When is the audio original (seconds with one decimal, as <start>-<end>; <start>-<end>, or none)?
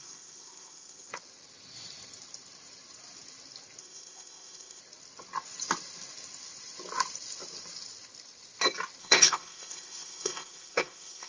1.1-3.8; 4.8-9.0